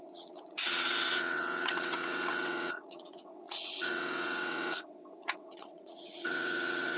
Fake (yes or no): yes